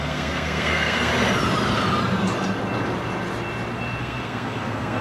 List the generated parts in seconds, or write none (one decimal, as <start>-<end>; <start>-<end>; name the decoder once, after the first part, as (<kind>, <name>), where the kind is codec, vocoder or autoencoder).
0.0-1.1 (codec, SNAC); 4.0-5.0